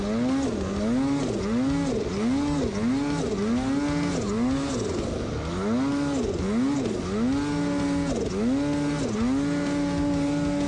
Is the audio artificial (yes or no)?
no